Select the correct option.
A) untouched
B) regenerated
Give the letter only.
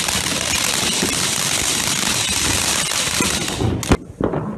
A